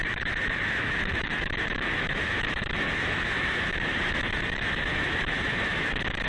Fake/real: fake